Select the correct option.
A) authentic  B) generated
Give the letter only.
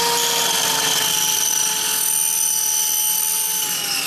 A